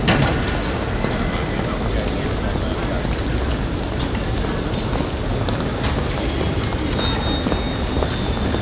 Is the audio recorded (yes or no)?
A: yes